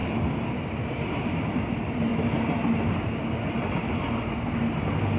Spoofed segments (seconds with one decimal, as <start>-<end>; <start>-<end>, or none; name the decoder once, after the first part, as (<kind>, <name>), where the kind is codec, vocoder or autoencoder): none